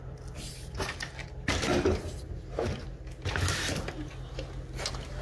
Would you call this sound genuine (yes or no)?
yes